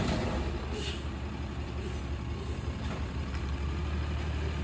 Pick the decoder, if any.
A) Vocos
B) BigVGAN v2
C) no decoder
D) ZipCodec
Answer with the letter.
C